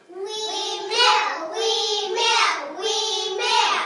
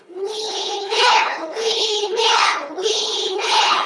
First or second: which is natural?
first